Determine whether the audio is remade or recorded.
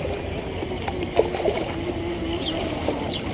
recorded